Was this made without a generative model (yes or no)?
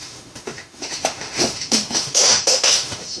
no